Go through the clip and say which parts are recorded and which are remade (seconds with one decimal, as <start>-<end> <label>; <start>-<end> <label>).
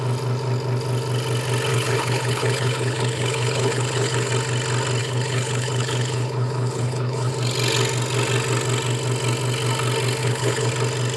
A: 0.0-1.7 recorded; 1.7-4.3 remade; 4.3-5.0 recorded; 5.0-7.3 remade; 7.3-10.2 recorded; 10.2-10.7 remade; 10.7-11.2 recorded